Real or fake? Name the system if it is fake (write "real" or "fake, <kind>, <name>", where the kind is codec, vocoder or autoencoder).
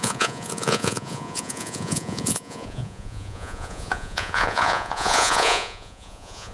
fake, vocoder, Vocos